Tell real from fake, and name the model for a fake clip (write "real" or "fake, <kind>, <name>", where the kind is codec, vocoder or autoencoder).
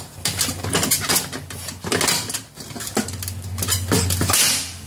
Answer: real